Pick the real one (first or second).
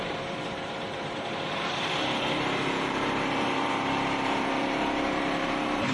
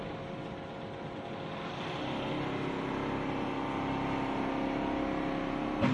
second